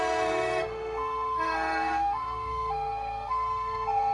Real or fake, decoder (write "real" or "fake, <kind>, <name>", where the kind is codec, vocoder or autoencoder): fake, codec, SNAC